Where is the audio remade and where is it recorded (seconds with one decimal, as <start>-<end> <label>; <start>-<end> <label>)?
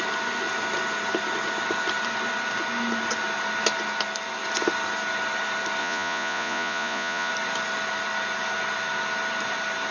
0.0-5.8 recorded; 5.8-7.3 remade; 7.3-9.9 recorded